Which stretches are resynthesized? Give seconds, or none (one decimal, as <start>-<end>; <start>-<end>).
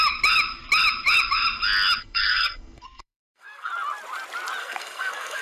2.0-3.7; 4.6-5.4